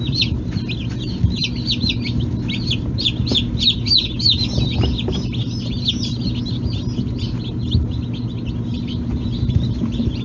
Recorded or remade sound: recorded